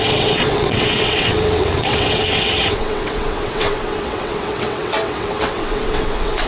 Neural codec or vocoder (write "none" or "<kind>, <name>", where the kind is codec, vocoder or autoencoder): vocoder, WaveNeXt